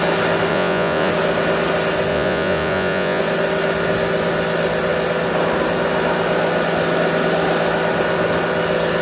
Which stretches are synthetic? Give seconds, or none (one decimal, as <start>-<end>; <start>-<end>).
0.5-1.1; 2.1-3.2